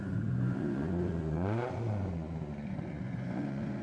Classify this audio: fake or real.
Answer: fake